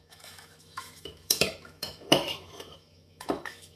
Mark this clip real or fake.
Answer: fake